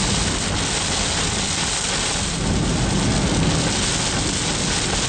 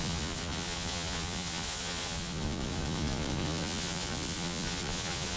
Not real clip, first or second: second